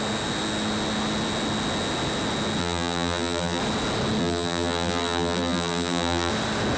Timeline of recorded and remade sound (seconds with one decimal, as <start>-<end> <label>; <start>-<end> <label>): 0.0-2.6 recorded; 2.6-3.6 remade; 3.6-4.2 recorded; 4.2-6.3 remade; 6.3-6.8 recorded